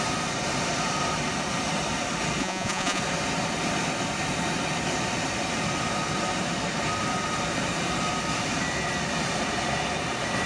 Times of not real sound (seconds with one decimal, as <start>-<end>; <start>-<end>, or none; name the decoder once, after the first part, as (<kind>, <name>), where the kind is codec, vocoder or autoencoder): 2.4-3.0 (vocoder, Vocos)